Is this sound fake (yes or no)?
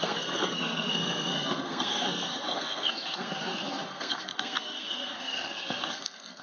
yes